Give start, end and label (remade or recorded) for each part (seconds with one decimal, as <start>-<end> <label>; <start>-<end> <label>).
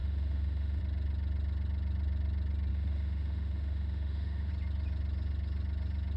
0.0-0.8 remade; 0.8-2.7 recorded; 2.7-4.5 remade; 4.5-6.2 recorded